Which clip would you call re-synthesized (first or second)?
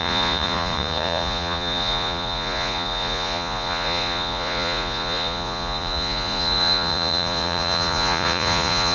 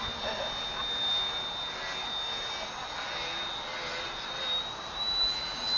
first